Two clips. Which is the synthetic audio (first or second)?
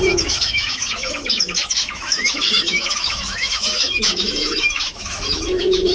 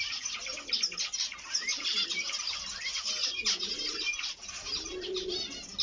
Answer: first